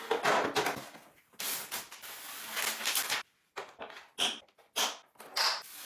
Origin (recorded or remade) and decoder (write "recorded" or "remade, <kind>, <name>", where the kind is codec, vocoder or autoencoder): recorded